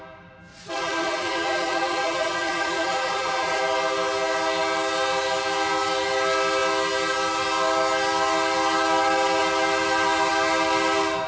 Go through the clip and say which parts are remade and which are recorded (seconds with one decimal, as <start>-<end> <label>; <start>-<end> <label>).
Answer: 0.0-0.5 recorded; 0.5-3.6 remade; 3.6-11.3 recorded